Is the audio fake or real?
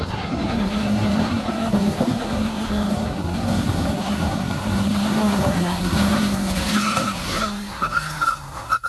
fake